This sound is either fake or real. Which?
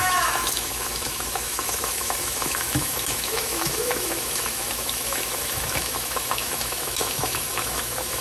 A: fake